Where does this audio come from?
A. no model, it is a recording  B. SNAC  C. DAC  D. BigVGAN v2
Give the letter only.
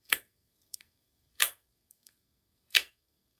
B